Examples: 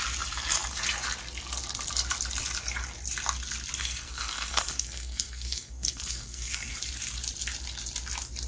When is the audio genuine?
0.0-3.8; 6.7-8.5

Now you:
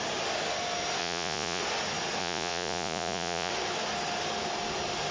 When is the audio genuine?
0.0-1.0; 1.6-2.2; 3.5-5.1

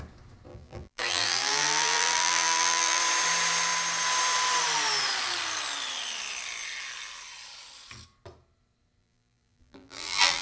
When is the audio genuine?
0.0-0.5; 3.0-9.0

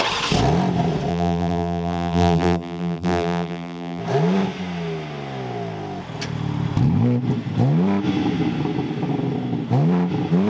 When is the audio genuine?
0.0-1.1; 4.0-10.5

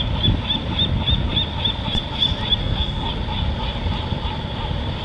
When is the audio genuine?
0.0-2.6; 3.1-5.0

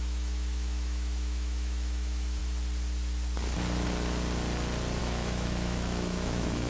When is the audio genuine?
2.4-5.0

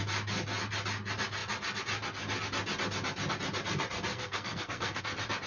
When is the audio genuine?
0.0-4.1; 5.0-5.5

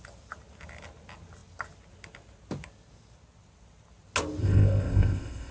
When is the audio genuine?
0.0-4.4